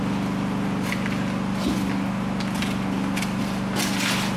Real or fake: real